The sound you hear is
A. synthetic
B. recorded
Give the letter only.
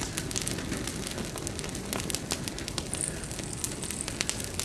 B